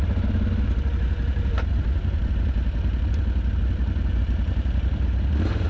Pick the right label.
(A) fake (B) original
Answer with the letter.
B